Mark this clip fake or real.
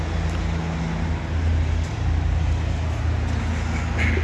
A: real